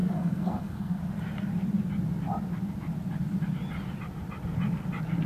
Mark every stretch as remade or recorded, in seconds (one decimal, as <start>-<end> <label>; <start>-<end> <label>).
0.0-1.0 remade; 1.0-5.3 recorded